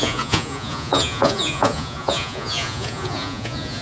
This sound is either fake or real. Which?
fake